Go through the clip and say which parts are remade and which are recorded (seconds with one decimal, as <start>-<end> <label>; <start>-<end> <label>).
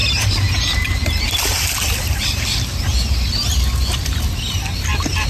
0.0-2.7 remade; 2.7-5.3 recorded